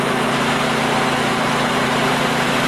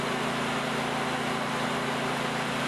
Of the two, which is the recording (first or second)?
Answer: second